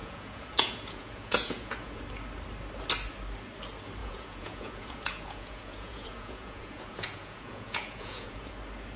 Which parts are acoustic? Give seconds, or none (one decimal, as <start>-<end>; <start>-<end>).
2.0-4.0; 8.5-9.0